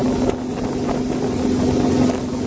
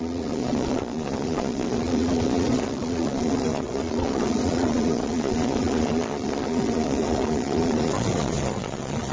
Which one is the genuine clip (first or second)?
first